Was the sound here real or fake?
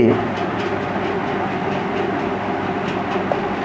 real